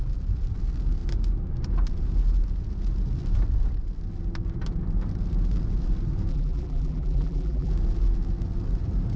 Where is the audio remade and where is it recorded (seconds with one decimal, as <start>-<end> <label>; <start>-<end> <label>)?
0.0-6.3 recorded; 6.3-7.7 remade; 7.7-9.2 recorded